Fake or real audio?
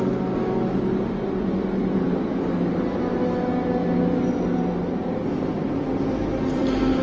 real